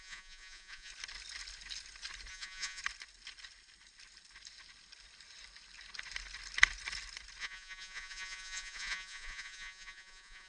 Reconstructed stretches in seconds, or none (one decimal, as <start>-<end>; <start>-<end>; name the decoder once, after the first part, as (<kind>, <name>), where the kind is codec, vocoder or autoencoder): 0.0-0.9 (vocoder, Vocos); 2.3-2.8; 7.4-10.5